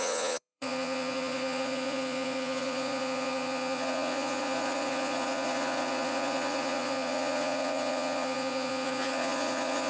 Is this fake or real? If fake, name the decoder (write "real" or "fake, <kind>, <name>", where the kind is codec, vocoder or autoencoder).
fake, vocoder, Vocos